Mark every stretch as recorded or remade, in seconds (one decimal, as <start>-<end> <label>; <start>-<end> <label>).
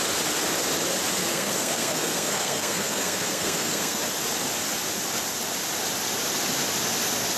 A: 0.0-1.2 recorded; 1.2-4.0 remade; 4.0-7.4 recorded